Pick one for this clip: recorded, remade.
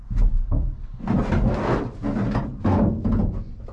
recorded